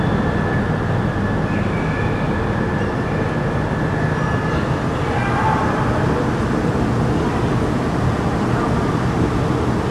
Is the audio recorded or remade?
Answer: recorded